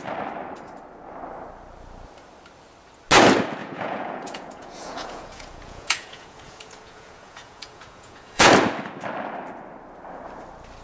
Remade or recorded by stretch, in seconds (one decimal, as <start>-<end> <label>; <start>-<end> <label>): 0.0-3.6 recorded; 3.6-8.5 remade; 8.5-10.8 recorded